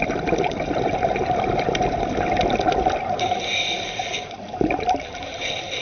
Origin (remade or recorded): remade